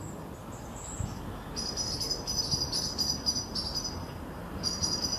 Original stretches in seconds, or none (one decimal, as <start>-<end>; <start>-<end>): 0.0-5.2